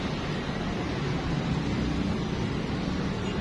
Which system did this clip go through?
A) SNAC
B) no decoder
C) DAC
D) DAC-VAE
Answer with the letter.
B